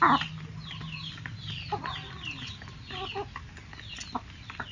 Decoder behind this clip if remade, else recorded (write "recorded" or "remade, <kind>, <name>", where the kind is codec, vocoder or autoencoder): recorded